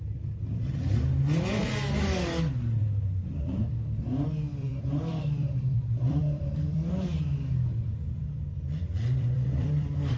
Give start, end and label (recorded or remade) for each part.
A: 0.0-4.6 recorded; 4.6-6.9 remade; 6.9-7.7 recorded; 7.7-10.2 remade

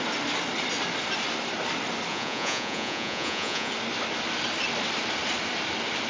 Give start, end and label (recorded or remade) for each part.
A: 0.0-2.1 recorded; 2.1-3.7 remade; 3.7-6.1 recorded

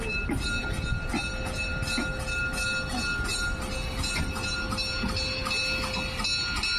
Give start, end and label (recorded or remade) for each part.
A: 0.0-6.8 recorded

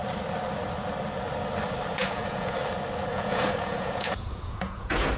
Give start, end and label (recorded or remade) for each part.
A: 0.0-1.9 recorded; 1.9-2.6 remade; 2.6-3.1 recorded; 3.1-5.2 remade

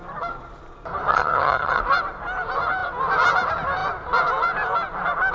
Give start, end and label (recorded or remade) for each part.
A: 0.0-1.1 recorded; 1.1-1.8 remade; 1.8-5.3 recorded

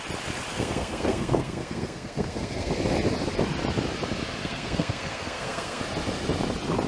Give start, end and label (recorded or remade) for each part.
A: 0.0-0.5 recorded; 0.5-2.7 remade; 2.7-4.4 recorded; 4.4-5.8 remade; 5.8-6.9 recorded